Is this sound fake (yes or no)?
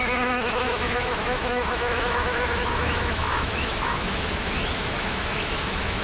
yes